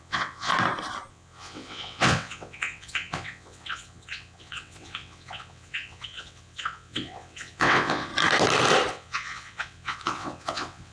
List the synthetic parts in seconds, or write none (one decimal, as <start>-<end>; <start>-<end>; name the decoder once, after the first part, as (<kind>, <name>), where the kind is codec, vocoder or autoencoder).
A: 0.0-0.5 (vocoder, WaveNeXt); 1.1-8.1; 8.9-10.9

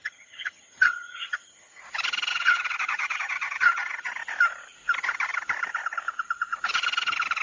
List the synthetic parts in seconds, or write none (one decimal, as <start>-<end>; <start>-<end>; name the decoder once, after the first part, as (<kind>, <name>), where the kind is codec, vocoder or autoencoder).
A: 0.0-1.8 (vocoder, HiFi-GAN); 2.3-4.1